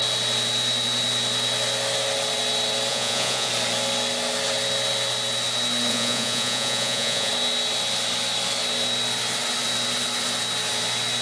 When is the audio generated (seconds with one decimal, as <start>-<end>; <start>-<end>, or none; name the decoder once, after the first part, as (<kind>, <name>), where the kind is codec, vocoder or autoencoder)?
2.9-3.5 (vocoder, Vocos); 5.9-7.3